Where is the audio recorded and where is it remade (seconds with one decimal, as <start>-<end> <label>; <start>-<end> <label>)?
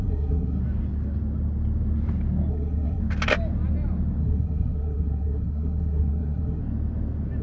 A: 0.0-0.6 remade; 0.6-2.5 recorded; 2.5-3.0 remade; 3.0-4.2 recorded; 4.2-6.6 remade; 6.6-7.4 recorded